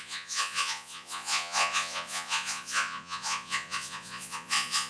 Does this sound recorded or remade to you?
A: remade